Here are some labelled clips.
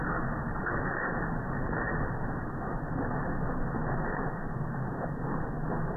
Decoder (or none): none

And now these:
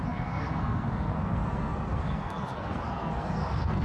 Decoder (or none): codec, SNAC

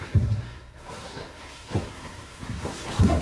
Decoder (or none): codec, SNAC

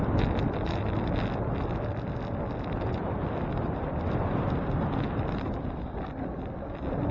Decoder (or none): none